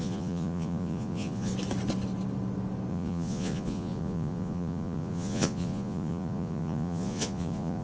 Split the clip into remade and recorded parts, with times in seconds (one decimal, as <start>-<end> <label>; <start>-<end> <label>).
0.0-1.5 remade; 1.5-2.9 recorded; 2.9-7.8 remade